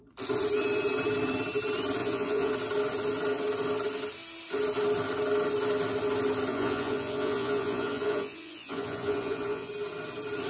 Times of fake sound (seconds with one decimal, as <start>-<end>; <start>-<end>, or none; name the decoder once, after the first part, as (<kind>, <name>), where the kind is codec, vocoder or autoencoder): 2.0-2.5 (vocoder, Vocos); 6.5-9.7